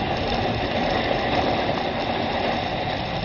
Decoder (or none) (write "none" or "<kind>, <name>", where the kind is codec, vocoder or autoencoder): none